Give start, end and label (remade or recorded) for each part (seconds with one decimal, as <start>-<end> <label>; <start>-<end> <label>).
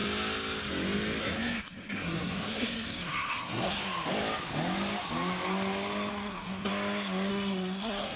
0.0-1.2 recorded; 1.2-3.8 remade; 3.8-6.1 recorded; 6.1-6.7 remade; 6.7-7.3 recorded; 7.3-8.2 remade